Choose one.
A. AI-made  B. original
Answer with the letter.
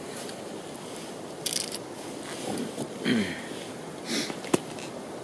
B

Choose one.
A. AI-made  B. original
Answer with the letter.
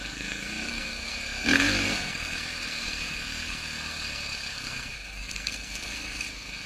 A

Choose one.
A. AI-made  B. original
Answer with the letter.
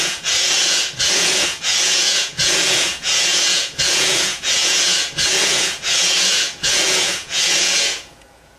A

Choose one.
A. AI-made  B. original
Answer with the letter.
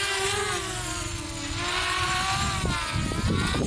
B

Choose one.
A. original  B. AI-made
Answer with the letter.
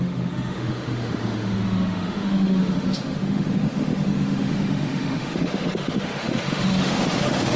B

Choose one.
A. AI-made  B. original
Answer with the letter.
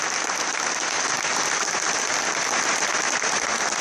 B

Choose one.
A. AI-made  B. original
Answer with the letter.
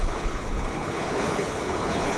A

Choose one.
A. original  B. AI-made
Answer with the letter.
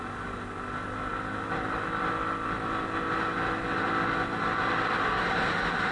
A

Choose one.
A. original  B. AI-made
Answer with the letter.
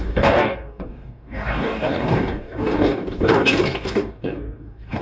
B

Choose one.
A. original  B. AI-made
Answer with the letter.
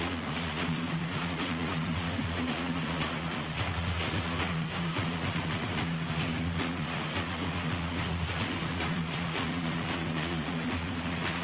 B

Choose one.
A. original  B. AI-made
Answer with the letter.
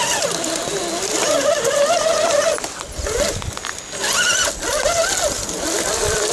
A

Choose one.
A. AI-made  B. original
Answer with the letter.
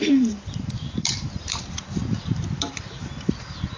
A